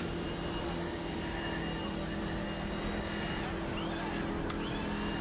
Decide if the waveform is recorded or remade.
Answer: recorded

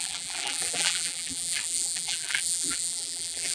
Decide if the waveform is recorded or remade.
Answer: remade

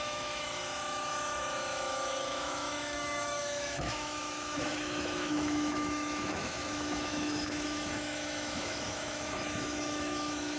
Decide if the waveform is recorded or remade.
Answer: remade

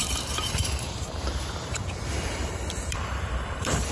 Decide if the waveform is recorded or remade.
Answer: remade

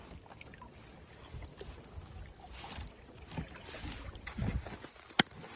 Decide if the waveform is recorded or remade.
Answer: recorded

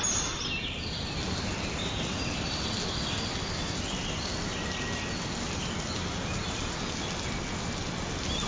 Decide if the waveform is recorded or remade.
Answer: recorded